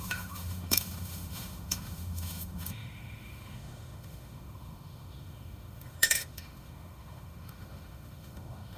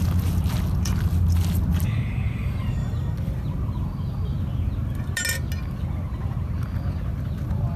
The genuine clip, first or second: second